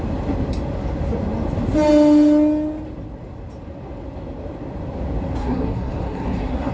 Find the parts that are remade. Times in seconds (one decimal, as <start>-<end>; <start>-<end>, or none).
5.4-6.7